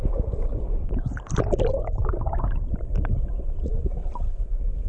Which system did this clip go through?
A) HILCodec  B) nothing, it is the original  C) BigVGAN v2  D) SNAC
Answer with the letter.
B